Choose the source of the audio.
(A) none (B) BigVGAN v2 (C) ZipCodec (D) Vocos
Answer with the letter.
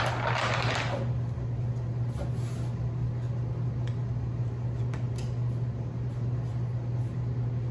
A